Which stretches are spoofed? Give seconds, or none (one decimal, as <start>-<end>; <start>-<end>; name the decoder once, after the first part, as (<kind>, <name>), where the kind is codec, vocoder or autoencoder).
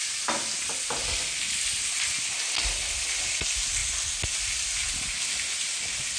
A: none